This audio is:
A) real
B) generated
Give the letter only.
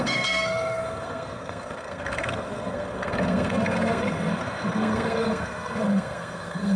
B